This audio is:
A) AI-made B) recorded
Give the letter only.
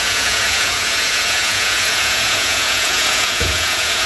A